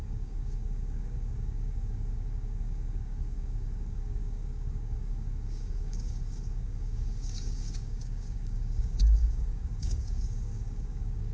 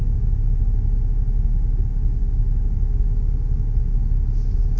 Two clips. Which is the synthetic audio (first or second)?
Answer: first